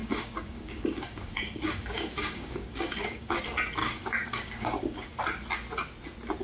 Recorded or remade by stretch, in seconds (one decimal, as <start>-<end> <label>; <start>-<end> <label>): 0.0-3.4 remade; 3.4-3.8 recorded; 3.8-5.2 remade; 5.2-6.4 recorded